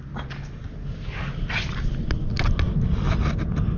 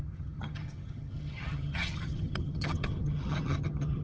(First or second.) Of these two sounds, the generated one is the second